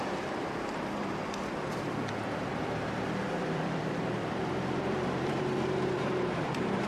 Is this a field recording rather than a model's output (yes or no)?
no